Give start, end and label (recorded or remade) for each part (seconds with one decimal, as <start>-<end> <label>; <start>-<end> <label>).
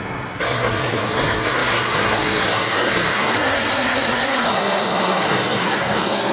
0.0-6.3 remade